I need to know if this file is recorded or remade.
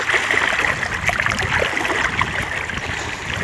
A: recorded